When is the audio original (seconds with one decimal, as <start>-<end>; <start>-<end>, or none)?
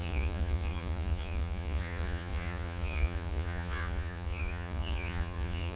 none